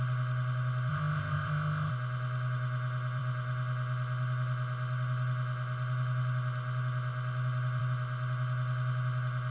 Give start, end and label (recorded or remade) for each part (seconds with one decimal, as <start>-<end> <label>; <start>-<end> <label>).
0.0-0.9 recorded; 0.9-1.9 remade; 1.9-9.5 recorded